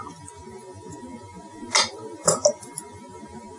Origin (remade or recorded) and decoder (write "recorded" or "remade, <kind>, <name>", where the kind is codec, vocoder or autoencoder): recorded